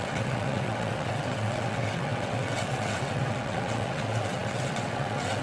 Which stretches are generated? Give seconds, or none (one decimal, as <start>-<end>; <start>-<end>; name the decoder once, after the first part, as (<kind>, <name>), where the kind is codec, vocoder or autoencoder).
0.0-5.4 (vocoder, WaveNeXt)